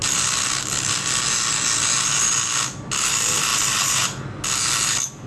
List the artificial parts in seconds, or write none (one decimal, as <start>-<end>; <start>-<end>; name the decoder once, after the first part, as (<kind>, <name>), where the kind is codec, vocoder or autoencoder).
none